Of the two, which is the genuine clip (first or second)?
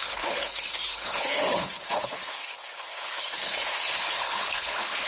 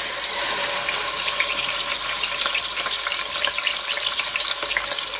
second